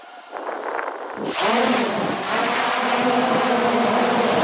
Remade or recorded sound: recorded